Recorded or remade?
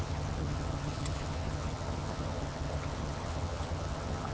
remade